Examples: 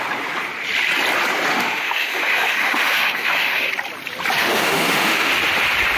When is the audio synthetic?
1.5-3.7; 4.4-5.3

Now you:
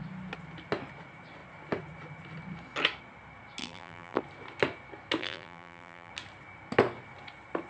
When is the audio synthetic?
3.6-4.2; 5.2-6.1

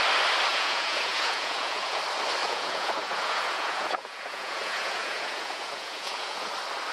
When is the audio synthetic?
0.5-2.0; 2.4-6.5

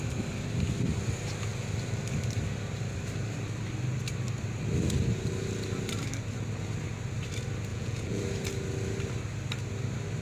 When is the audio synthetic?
7.7-8.2

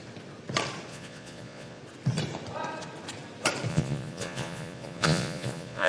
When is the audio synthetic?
0.9-1.8; 3.7-5.9

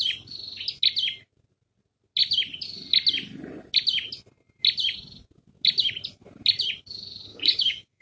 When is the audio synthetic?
7.3-8.0

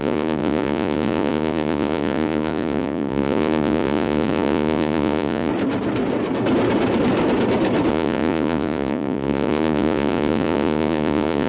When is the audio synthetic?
0.0-5.5; 7.9-11.5